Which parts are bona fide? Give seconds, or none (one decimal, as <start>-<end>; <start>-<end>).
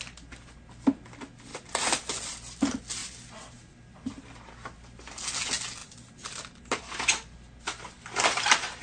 0.0-8.8